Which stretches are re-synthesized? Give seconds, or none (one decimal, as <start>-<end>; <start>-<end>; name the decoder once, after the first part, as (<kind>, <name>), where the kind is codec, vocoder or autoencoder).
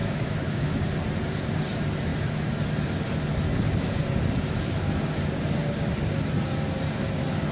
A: 0.0-0.8 (autoencoder, DAC-VAE)